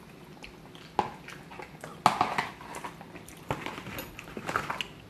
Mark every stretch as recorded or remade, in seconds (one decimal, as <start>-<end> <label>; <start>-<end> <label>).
0.0-5.1 recorded